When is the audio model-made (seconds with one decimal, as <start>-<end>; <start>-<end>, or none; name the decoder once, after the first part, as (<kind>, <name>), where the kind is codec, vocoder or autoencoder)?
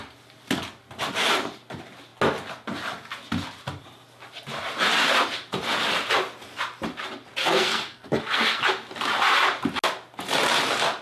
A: 7.4-8.6 (codec, SNAC)